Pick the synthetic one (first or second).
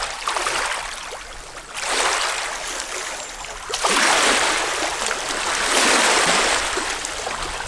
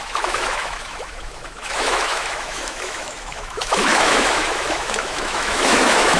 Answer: second